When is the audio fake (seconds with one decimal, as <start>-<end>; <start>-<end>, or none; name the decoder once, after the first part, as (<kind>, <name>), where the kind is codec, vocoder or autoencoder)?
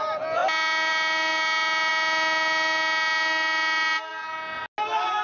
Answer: none